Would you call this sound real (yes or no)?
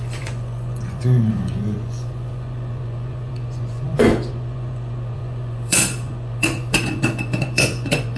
no